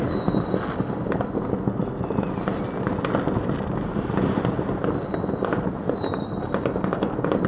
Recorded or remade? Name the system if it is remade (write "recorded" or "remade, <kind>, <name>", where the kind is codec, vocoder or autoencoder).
recorded